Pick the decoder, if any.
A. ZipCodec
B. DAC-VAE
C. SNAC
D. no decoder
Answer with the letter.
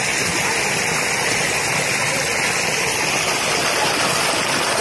D